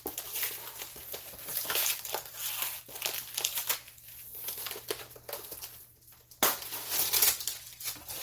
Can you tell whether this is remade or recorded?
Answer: recorded